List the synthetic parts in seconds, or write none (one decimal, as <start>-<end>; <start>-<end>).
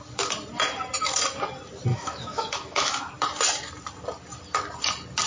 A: 1.9-3.1